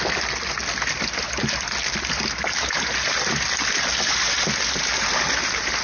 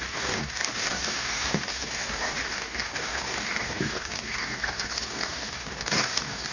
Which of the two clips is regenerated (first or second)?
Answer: second